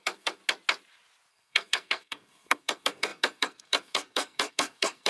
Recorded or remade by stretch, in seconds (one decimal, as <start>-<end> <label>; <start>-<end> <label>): 0.0-0.4 remade; 0.4-1.3 recorded; 1.3-5.1 remade